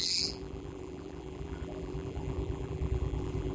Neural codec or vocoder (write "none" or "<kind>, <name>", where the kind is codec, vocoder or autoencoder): vocoder, BigVGAN v2